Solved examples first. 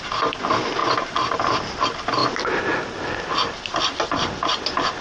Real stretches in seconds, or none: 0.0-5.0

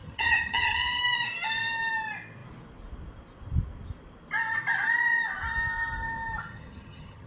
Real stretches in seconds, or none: 1.0-6.4

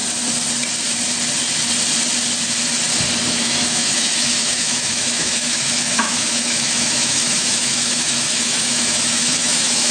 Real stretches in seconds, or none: 0.0-3.3

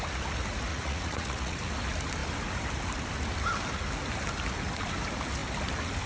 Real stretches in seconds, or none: 0.0-0.7; 1.7-6.1

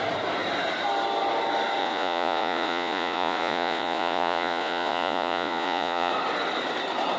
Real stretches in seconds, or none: 0.0-1.8; 6.1-7.2